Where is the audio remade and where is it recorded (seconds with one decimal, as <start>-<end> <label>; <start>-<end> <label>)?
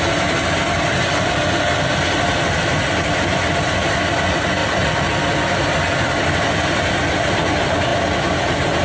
0.0-4.6 recorded; 4.6-7.5 remade; 7.5-8.8 recorded